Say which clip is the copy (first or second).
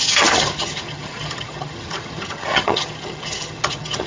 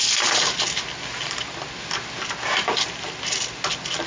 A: first